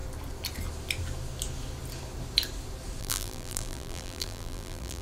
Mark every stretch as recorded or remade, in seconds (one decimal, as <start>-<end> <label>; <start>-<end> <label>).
0.0-3.0 recorded; 3.0-5.0 remade